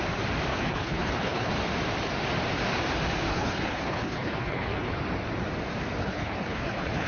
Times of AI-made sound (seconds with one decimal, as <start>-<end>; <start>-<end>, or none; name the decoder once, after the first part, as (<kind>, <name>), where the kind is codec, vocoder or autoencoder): 0.5-1.5 (codec, HILCodec); 3.3-5.0; 6.0-7.1

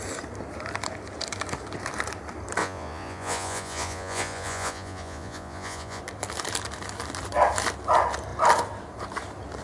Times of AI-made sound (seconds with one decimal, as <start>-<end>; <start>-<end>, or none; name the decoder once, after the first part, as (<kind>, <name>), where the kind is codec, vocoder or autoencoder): 2.6-6.0 (vocoder, Vocos)